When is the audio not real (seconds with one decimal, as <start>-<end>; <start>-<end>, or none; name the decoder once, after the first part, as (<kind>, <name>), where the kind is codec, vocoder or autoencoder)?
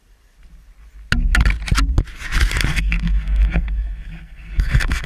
2.7-5.1 (codec, SNAC)